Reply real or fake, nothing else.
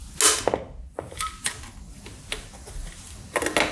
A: real